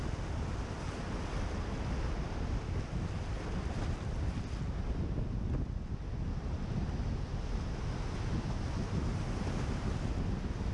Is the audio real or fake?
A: real